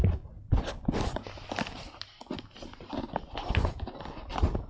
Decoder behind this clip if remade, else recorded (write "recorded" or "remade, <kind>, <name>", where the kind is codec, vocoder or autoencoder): recorded